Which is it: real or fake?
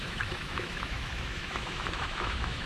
fake